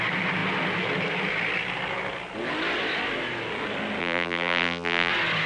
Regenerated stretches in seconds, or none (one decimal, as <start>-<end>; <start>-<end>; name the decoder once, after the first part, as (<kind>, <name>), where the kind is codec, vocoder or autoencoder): 4.0-5.1 (vocoder, BigVGAN v2)